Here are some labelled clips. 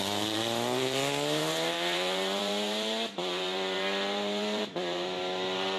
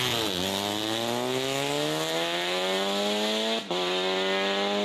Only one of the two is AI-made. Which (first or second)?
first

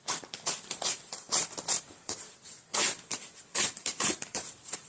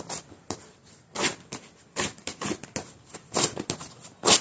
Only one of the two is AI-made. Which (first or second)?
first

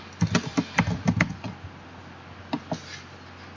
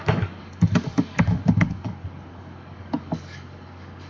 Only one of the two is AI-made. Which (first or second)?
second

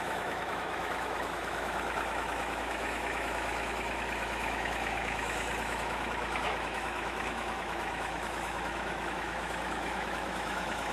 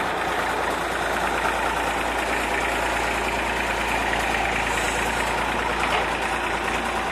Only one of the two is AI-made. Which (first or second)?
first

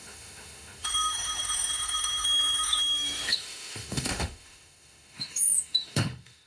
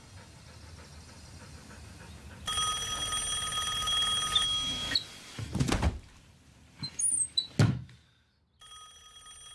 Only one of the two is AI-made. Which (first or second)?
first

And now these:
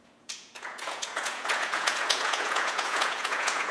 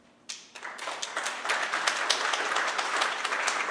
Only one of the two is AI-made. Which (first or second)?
first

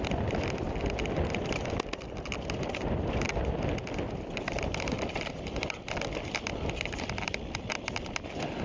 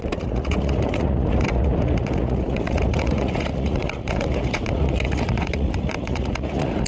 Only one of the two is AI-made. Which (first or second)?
second